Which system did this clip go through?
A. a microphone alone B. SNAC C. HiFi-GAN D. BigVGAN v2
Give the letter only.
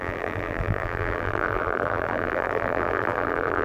D